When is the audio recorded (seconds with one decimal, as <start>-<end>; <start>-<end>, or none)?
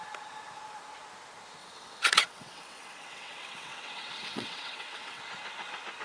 0.0-1.6; 5.2-6.0